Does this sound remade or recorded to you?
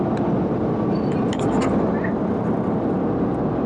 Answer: recorded